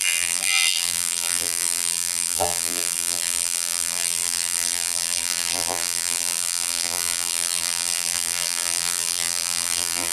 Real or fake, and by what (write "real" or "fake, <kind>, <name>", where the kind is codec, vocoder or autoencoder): fake, vocoder, BigVGAN v2